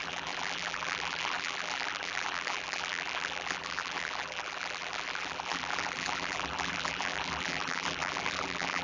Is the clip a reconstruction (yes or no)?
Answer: yes